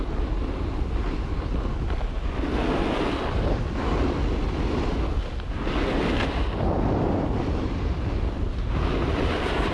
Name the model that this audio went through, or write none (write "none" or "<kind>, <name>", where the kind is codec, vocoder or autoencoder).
none